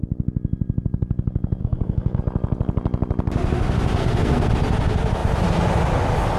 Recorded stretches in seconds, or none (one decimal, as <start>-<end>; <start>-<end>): 0.0-1.6; 2.2-4.0; 4.5-6.4

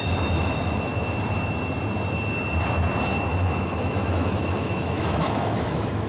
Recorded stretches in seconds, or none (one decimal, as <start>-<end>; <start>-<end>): 0.9-3.3

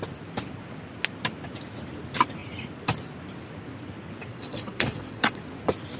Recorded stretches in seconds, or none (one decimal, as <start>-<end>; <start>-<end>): 0.0-4.3; 5.4-6.0

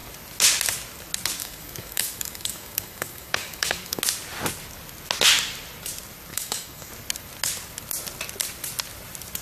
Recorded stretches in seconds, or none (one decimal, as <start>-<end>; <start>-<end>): 0.0-1.4; 4.0-6.3; 6.9-9.4

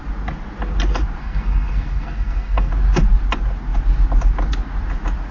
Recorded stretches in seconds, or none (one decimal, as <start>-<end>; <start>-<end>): 0.0-1.2; 2.7-5.3

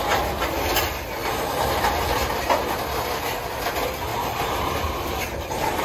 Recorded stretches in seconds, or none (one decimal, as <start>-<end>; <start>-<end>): 0.0-1.2; 1.8-4.1

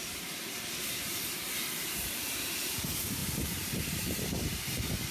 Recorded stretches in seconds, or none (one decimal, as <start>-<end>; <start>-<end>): none